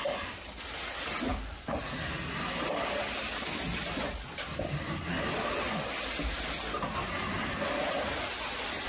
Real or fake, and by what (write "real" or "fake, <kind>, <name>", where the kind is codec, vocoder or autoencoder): real